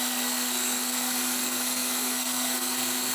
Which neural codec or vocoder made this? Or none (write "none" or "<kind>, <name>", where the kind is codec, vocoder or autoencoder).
codec, SNAC